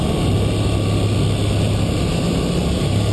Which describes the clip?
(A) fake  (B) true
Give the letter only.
B